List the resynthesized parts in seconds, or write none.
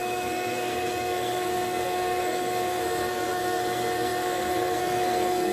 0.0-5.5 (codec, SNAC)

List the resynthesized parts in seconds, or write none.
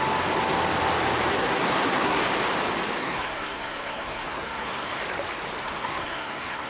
1.3-2.2 (codec, SNAC); 3.0-5.0; 5.6-6.7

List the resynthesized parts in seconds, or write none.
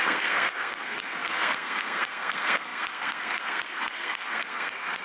0.0-5.0 (codec, SNAC)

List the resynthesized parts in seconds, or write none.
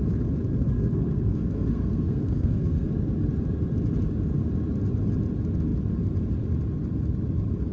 0.5-2.9 (codec, SNAC)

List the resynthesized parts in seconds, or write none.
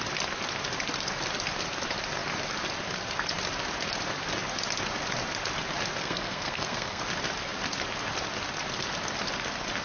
6.0-7.0 (codec, SNAC)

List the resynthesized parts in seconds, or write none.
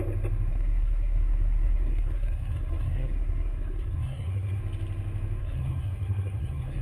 0.5-4.6 (codec, SNAC); 5.4-6.8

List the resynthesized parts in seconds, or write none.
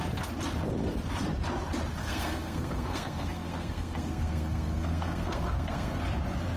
2.0-6.0 (codec, SNAC)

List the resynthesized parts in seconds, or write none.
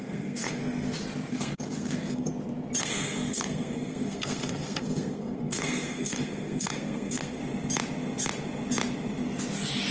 0.0-0.6 (codec, SNAC); 1.3-2.3; 2.8-7.4